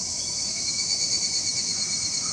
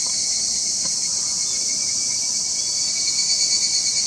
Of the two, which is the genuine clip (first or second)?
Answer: second